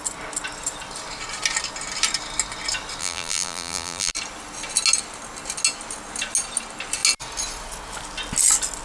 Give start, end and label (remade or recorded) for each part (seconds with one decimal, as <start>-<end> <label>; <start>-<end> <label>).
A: 0.0-3.0 recorded; 3.0-4.1 remade; 4.1-8.8 recorded